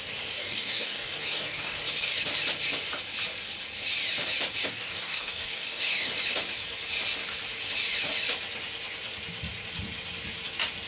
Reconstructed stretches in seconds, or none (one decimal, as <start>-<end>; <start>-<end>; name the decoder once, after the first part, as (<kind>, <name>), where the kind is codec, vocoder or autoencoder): 0.4-1.8 (codec, DAC); 4.6-6.1